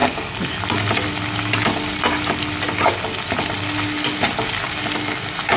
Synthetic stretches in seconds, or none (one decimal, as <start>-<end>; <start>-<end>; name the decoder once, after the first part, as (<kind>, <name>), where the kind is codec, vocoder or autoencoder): none